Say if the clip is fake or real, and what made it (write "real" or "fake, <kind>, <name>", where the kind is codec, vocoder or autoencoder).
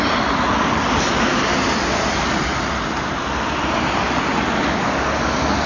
real